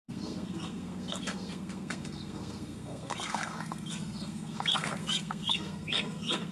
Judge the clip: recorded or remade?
remade